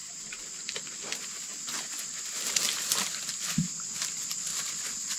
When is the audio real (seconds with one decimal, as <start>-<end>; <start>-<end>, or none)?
1.5-2.6; 4.5-5.2